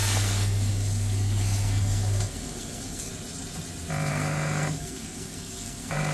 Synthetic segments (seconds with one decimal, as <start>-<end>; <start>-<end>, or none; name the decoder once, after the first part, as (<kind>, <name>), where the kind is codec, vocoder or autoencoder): 0.0-3.1 (codec, SNAC); 4.1-6.1

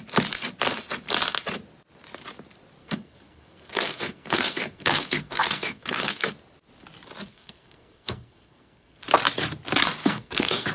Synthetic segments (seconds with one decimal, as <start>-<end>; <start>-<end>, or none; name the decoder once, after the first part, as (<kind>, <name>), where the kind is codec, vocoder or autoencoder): 2.8-6.3 (codec, SNAC); 7.3-9.0; 10.0-10.7